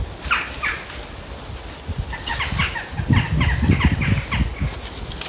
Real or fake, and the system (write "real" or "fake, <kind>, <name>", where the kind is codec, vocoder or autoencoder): real